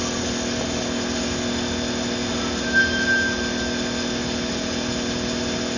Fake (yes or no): no